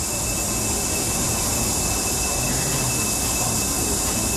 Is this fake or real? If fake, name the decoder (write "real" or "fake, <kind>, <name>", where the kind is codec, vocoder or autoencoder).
real